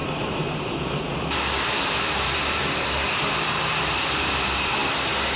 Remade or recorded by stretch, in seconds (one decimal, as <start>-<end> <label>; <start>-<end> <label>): 0.0-4.8 remade; 4.8-5.4 recorded